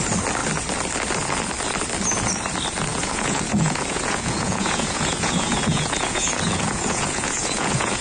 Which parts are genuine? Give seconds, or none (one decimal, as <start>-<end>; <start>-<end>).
0.0-2.9